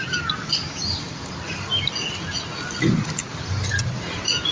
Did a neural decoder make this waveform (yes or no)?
no